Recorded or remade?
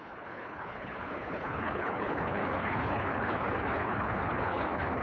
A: remade